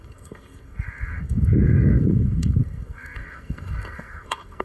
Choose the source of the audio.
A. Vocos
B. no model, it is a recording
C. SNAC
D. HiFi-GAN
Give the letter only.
C